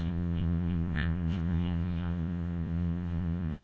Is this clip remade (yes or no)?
yes